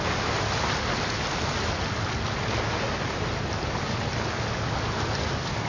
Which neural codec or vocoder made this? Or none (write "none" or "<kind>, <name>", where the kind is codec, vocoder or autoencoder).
none